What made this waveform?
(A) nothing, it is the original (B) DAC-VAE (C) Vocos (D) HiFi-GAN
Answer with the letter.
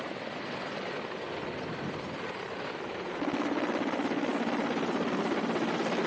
A